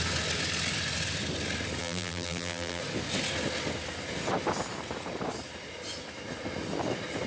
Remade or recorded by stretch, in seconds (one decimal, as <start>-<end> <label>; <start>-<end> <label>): 0.0-1.8 recorded; 1.8-2.8 remade; 2.8-7.3 recorded